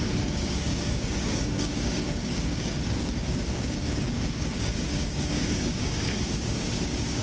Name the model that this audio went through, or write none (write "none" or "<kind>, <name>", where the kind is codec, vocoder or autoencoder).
codec, DAC